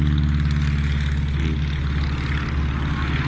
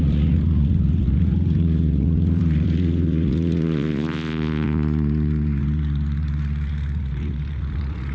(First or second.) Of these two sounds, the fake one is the second